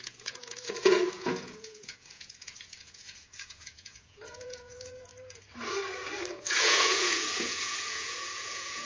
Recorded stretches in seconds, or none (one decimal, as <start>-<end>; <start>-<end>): 5.1-6.3